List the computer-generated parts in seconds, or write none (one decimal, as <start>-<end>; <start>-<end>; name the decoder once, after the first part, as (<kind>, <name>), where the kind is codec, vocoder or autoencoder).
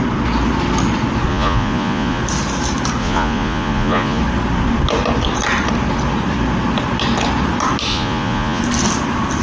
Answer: 1.3-2.2 (vocoder, Vocos); 3.0-4.2; 7.9-8.6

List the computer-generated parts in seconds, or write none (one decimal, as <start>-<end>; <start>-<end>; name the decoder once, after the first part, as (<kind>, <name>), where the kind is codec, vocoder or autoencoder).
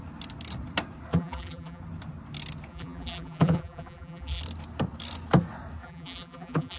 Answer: 1.1-1.8 (vocoder, BigVGAN v2); 2.7-4.4; 5.8-6.8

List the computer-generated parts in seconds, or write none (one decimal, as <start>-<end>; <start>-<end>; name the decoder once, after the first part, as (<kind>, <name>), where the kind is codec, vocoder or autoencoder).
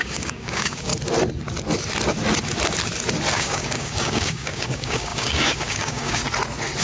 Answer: 0.0-0.9 (codec, DAC); 3.3-6.2